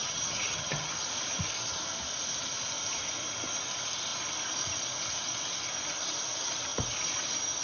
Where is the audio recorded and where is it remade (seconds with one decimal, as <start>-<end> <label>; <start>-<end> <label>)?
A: 0.0-0.9 remade; 0.9-7.6 recorded